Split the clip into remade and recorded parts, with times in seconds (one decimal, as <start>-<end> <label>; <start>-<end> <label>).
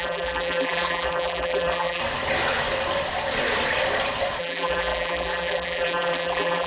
0.0-2.0 remade; 2.0-4.4 recorded; 4.4-6.7 remade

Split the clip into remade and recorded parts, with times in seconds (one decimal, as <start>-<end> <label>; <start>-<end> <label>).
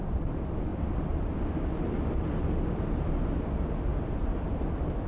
0.0-0.7 recorded; 0.7-3.2 remade; 3.2-3.9 recorded; 3.9-5.1 remade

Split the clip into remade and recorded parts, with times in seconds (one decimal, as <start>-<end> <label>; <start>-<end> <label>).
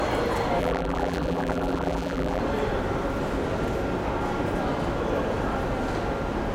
0.0-0.6 recorded; 0.6-2.4 remade; 2.4-6.5 recorded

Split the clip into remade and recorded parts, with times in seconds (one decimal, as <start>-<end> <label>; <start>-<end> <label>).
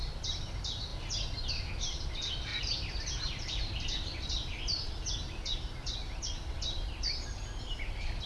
0.0-0.9 remade; 0.9-1.5 recorded; 1.5-8.3 remade